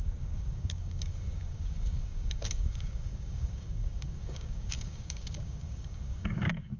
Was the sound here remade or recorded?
remade